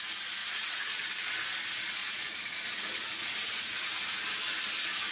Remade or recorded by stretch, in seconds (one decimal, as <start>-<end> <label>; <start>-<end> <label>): 0.0-0.4 recorded; 0.4-1.1 remade; 1.1-2.0 recorded; 2.0-4.0 remade; 4.0-5.1 recorded